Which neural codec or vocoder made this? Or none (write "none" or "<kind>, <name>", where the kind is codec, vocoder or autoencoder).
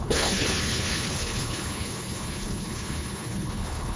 codec, HILCodec